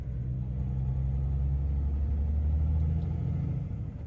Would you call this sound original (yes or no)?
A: yes